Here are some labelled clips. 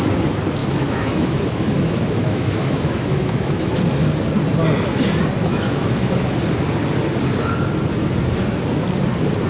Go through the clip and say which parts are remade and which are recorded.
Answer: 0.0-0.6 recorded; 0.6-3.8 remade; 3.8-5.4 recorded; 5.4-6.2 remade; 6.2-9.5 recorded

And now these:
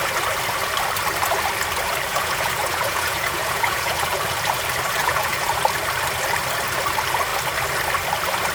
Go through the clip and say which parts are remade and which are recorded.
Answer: 0.0-2.1 recorded; 2.1-4.2 remade; 4.2-5.0 recorded; 5.0-5.6 remade; 5.6-8.5 recorded

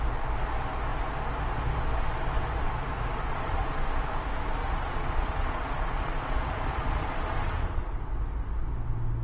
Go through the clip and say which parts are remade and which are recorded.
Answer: 0.0-3.3 recorded; 3.3-3.8 remade; 3.8-4.6 recorded; 4.6-7.9 remade; 7.9-9.2 recorded

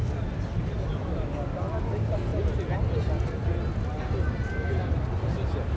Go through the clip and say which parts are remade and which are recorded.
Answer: 0.0-5.8 recorded

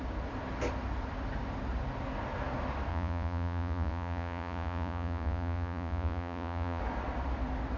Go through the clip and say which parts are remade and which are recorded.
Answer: 0.0-2.9 recorded; 2.9-6.8 remade; 6.8-7.8 recorded

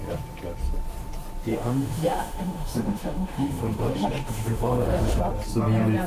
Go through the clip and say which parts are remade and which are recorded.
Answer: 0.0-1.5 recorded; 1.5-5.2 remade; 5.2-6.1 recorded